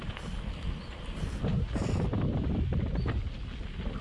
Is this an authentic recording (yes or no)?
yes